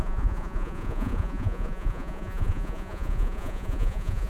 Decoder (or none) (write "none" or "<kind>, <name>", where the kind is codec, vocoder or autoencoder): vocoder, Vocos